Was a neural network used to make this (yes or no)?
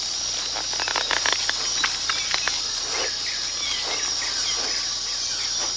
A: no